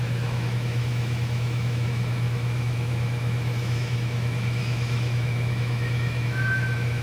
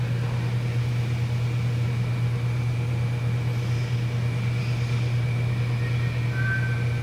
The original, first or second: second